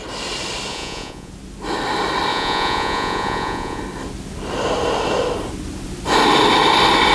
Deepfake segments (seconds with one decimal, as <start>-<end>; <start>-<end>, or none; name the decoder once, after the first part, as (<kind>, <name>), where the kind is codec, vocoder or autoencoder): 0.7-1.3 (vocoder, Vocos); 2.3-3.8